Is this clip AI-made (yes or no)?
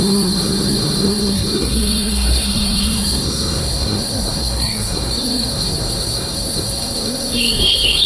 yes